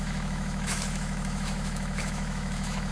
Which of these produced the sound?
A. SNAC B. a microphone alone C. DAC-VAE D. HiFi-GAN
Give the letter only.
C